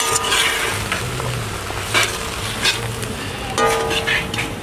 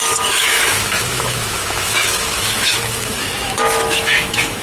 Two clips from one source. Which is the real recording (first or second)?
first